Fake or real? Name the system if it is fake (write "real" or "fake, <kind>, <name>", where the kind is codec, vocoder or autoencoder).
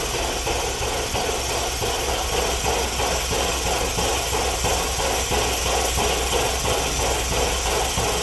real